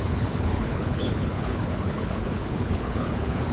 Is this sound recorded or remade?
remade